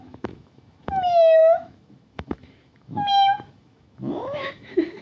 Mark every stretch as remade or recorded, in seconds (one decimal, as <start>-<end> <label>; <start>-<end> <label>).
0.0-5.0 remade